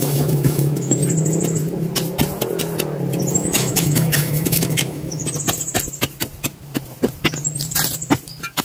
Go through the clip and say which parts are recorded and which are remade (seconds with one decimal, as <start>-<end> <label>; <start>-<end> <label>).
0.0-1.0 remade; 1.0-3.3 recorded; 3.3-5.2 remade; 5.2-8.6 recorded